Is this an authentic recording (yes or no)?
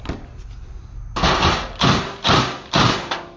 yes